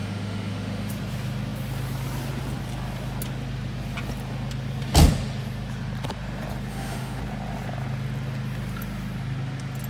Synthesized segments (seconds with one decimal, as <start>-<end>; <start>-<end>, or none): 0.0-0.9; 6.7-7.2

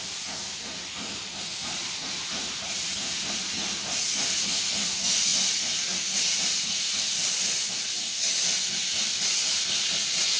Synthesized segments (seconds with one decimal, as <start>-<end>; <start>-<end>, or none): none

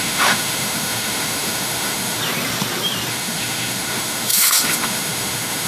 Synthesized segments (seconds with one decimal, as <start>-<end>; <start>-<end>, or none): 0.0-2.2; 3.1-5.7

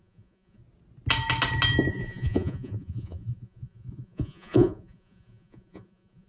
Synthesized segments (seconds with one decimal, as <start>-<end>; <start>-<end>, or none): 0.0-0.6; 1.9-6.3